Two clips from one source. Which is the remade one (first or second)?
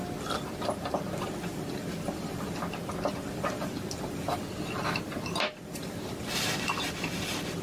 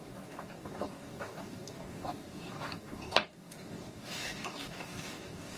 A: second